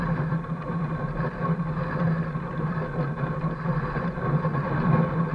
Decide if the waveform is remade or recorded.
remade